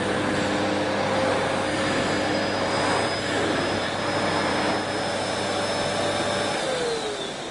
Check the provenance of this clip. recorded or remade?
recorded